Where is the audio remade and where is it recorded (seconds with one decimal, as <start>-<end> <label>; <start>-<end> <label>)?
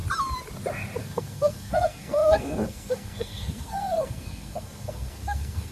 0.0-1.0 recorded; 1.0-5.7 remade